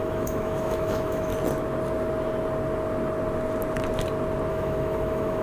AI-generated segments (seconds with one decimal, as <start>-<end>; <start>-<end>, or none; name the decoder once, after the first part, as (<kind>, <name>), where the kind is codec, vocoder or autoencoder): 0.0-1.3 (autoencoder, DAC-VAE); 4.5-5.4